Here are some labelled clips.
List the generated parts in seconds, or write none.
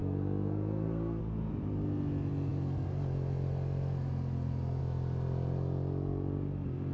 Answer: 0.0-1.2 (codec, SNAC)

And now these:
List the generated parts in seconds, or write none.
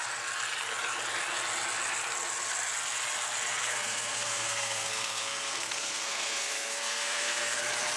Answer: 3.6-7.6 (codec, SNAC)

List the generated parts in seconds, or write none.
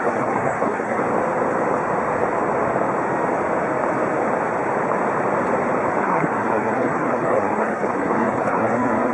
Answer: 0.0-1.0 (codec, SNAC); 6.0-9.1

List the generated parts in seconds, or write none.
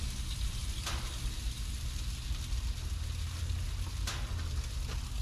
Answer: none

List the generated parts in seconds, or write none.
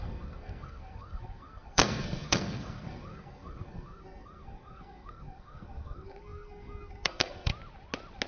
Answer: 0.0-7.5 (codec, SNAC)